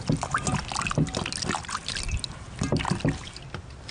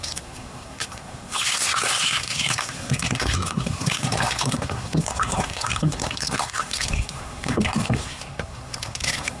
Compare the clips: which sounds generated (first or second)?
second